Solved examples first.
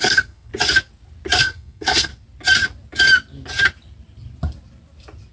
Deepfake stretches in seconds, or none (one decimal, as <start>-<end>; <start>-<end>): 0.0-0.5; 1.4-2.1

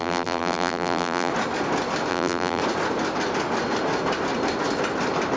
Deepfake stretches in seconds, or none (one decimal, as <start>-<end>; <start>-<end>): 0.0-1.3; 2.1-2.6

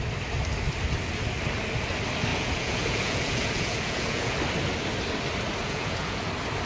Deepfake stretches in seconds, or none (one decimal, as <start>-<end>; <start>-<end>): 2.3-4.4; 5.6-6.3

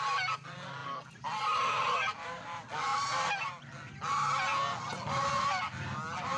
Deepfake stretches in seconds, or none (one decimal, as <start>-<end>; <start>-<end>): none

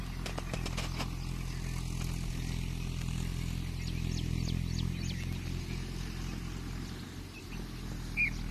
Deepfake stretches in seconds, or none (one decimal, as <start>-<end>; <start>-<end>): none

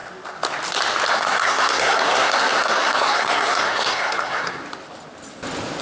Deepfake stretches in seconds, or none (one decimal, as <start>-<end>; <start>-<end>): 1.1-4.6

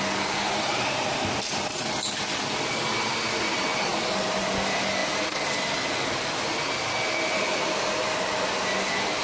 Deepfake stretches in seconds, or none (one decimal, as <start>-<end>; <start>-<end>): none

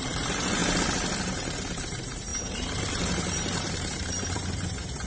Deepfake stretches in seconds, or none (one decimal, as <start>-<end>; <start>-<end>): 0.0-0.6; 1.2-5.1